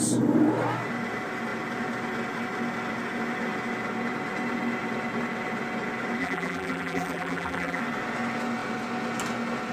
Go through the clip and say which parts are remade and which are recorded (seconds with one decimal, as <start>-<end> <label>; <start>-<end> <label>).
0.0-6.2 recorded; 6.2-7.8 remade; 7.8-9.7 recorded